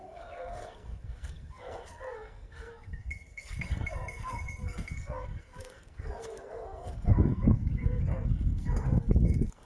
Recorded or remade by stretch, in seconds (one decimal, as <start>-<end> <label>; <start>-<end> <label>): 0.0-9.7 remade